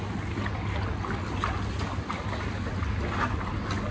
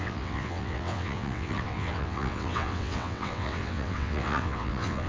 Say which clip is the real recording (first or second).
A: first